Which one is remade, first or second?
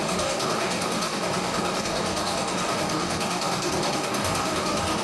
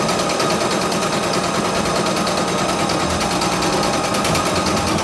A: first